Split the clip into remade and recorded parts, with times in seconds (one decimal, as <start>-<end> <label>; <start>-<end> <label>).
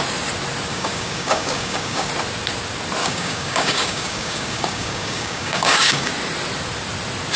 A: 0.0-0.7 recorded; 0.7-2.1 remade; 2.1-3.0 recorded; 3.0-6.1 remade; 6.1-7.4 recorded